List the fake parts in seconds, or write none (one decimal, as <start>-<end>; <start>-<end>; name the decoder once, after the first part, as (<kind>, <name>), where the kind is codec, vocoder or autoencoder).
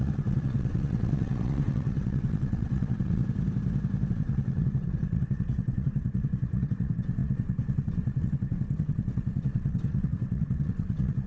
0.0-3.2 (vocoder, WaveNeXt); 4.1-11.3